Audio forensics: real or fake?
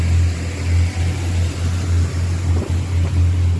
real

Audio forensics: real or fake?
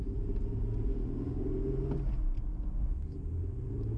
real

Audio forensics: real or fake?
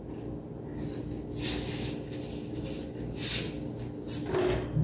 real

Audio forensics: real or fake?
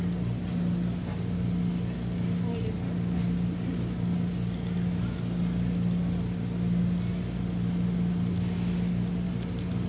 real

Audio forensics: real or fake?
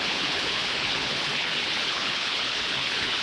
fake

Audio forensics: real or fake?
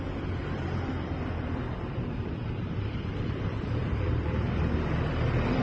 fake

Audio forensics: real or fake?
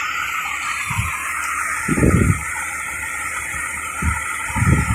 real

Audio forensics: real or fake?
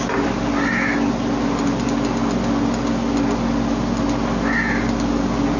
real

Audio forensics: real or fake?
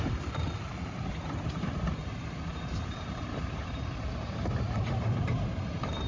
fake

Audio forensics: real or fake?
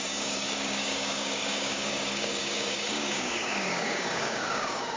fake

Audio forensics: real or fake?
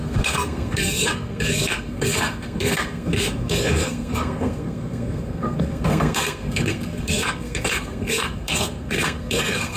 fake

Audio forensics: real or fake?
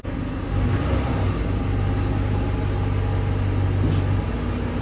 real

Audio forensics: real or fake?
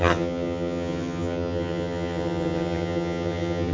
fake